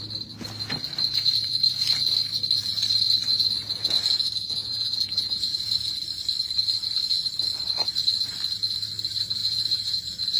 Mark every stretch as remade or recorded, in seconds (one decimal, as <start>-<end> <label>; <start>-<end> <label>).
0.0-4.6 recorded; 4.6-5.9 remade; 5.9-9.4 recorded; 9.4-10.0 remade; 10.0-10.4 recorded